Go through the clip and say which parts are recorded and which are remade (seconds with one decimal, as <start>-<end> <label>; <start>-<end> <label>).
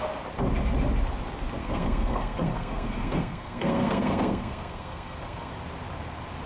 0.0-1.6 recorded; 1.6-5.5 remade; 5.5-6.5 recorded